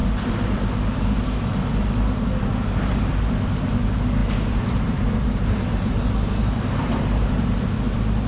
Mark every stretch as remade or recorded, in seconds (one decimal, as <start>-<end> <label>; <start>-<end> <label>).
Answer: 0.0-4.2 recorded; 4.2-7.7 remade; 7.7-8.3 recorded